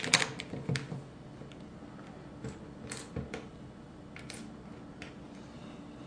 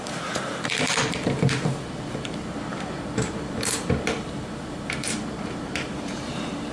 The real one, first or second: first